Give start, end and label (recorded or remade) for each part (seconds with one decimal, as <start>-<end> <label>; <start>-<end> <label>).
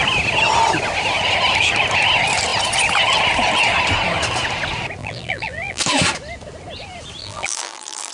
0.0-5.0 recorded; 5.0-5.8 remade; 5.8-7.2 recorded; 7.2-8.1 remade